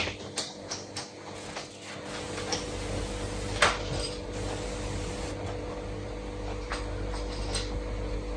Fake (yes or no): no